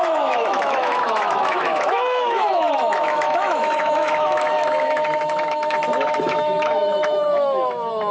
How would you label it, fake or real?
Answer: fake